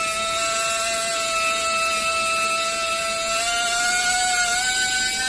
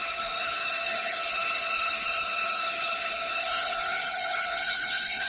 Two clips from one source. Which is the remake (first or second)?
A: second